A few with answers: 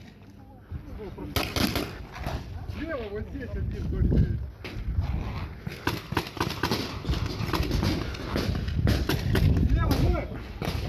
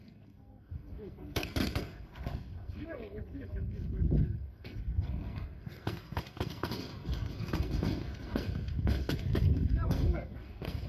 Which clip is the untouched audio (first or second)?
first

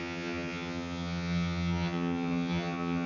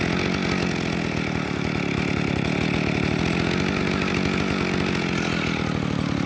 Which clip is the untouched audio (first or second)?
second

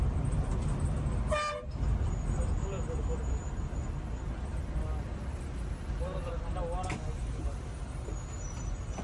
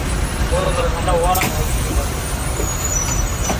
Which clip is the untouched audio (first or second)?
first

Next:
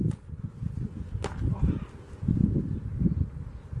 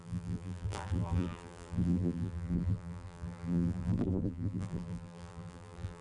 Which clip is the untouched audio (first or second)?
first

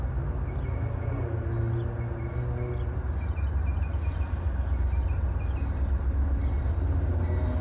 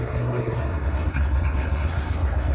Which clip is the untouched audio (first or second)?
first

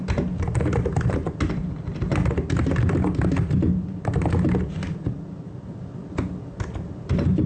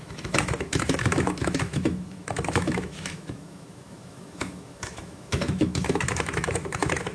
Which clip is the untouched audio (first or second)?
first